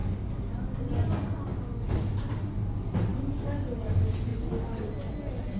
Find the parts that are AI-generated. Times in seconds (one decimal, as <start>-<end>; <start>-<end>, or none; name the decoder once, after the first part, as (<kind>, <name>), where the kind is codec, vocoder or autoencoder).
0.0-0.8 (codec, DAC); 3.1-3.9